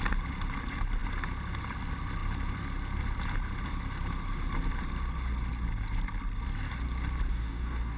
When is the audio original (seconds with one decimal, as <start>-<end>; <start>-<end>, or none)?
0.0-7.3